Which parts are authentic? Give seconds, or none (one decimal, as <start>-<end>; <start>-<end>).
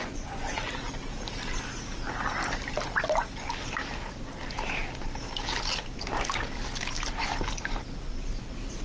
0.6-8.8